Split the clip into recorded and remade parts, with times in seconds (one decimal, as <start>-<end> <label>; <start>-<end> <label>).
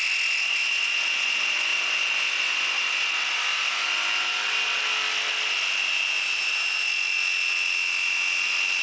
0.0-8.8 recorded